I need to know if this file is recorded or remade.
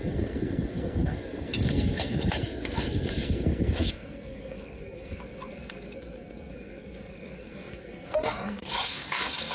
remade